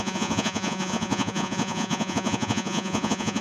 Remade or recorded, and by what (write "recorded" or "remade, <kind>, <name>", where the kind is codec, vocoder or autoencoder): remade, vocoder, Vocos